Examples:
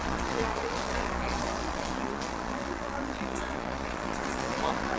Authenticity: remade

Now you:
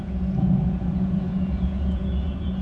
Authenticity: remade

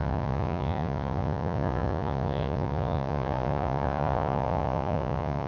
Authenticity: remade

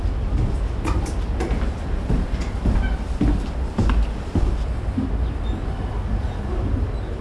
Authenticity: recorded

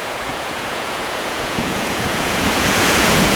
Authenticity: remade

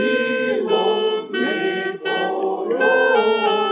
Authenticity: recorded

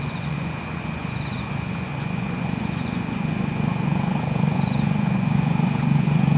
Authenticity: remade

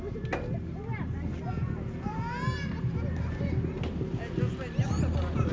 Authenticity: recorded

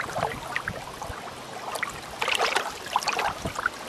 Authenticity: recorded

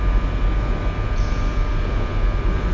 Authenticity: recorded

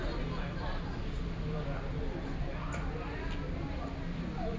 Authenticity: recorded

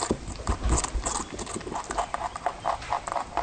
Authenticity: recorded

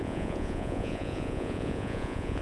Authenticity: remade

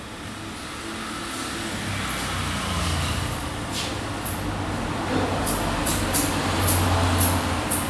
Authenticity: recorded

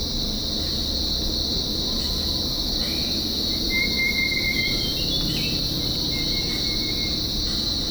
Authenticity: recorded